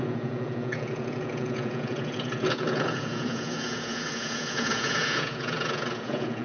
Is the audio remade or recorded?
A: remade